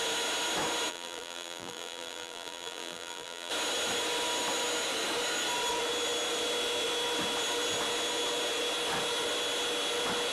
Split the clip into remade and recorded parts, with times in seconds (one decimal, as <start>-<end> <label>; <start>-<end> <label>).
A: 0.0-0.9 recorded; 0.9-3.5 remade; 3.5-10.3 recorded